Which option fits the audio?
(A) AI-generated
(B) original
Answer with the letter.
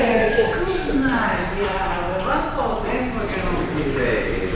A